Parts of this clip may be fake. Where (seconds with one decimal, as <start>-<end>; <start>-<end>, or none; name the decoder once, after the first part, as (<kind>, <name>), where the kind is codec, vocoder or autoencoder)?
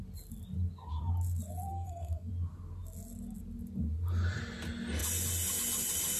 1.7-2.3 (codec, SNAC)